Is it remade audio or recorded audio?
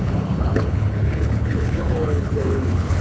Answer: remade